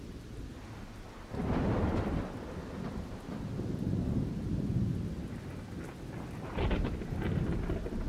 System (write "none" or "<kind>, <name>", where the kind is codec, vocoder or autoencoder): none